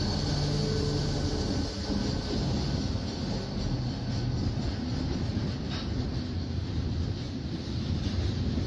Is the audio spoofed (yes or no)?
no